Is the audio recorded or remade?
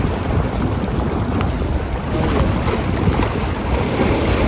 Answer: recorded